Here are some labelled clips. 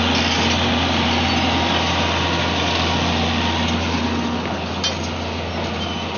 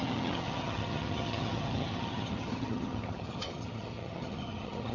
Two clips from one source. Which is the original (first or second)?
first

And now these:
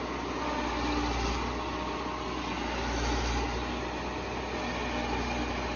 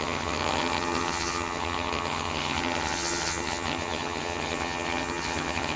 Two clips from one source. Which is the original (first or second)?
first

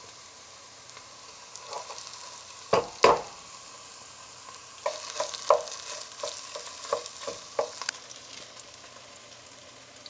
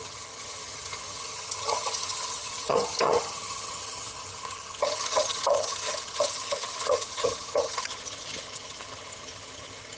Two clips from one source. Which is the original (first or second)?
first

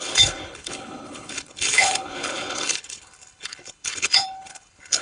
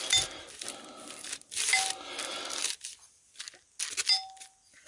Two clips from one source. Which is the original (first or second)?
second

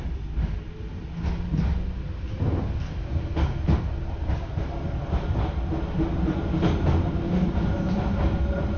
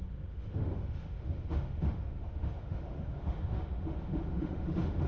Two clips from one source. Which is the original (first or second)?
first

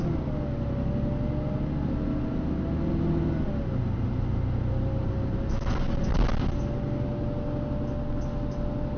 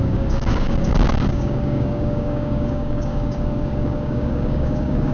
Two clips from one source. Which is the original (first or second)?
first